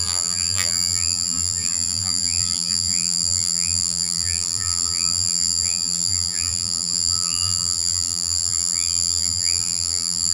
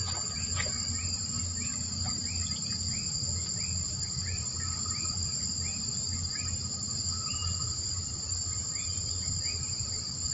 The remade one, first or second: first